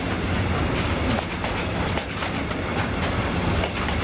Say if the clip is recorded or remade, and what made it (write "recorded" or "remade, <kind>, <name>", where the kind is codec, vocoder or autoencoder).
recorded